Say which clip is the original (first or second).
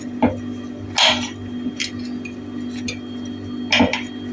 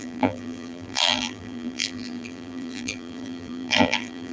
first